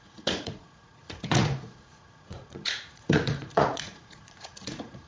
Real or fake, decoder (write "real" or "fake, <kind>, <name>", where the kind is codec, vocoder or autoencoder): fake, vocoder, Vocos